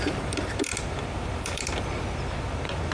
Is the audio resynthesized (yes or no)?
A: yes